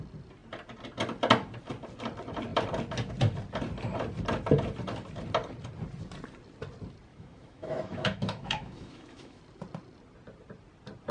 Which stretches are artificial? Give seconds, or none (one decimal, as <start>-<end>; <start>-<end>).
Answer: 7.1-9.4